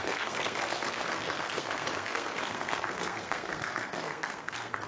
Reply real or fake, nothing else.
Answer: fake